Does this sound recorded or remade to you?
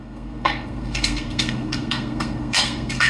remade